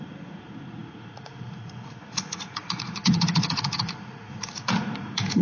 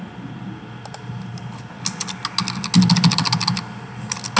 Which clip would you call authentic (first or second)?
second